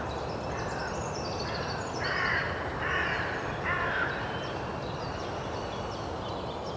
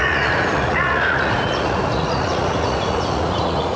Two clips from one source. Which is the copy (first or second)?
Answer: second